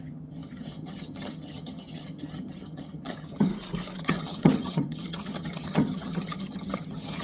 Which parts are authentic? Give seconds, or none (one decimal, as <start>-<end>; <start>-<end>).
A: 3.5-4.0